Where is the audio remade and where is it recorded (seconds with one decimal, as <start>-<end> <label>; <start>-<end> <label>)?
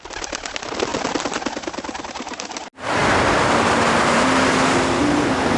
0.0-5.6 recorded